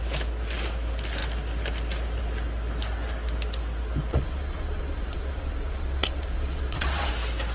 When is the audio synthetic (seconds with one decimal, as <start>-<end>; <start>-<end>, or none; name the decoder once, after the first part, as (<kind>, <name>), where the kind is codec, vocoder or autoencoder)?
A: 4.1-7.1 (vocoder, Vocos)